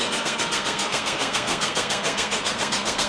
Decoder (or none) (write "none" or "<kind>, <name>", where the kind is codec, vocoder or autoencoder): codec, SNAC